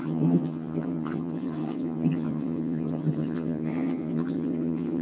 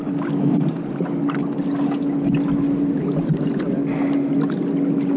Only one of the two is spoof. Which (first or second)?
first